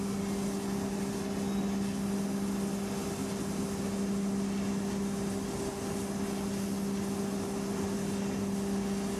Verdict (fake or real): real